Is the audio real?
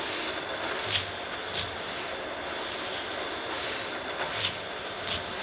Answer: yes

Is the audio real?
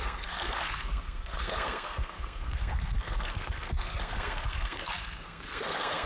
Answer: no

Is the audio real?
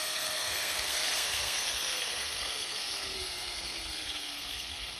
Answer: no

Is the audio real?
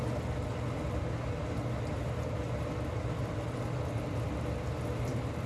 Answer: yes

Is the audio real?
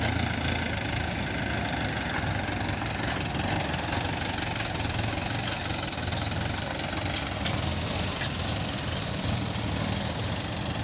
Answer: yes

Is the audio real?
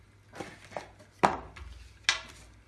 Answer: yes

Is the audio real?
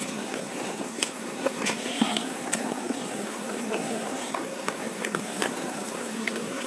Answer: no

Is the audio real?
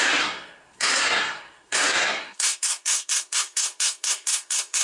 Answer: no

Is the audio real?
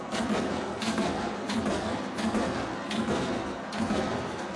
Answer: no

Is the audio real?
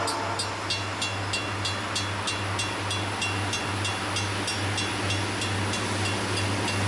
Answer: yes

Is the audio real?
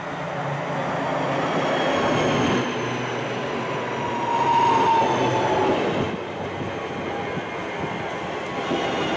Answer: yes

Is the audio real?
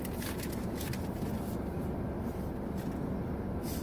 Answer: yes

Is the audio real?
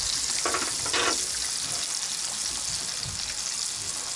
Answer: yes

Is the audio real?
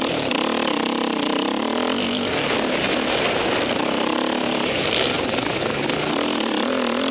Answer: yes